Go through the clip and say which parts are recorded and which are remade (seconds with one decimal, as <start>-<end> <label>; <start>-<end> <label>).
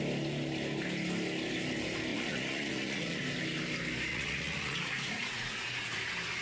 0.0-2.1 recorded; 2.1-3.2 remade; 3.2-4.1 recorded; 4.1-6.0 remade; 6.0-6.4 recorded